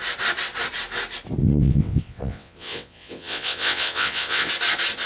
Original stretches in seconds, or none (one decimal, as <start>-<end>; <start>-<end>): 0.0-1.4; 4.5-5.1